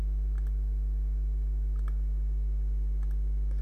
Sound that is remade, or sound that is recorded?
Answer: recorded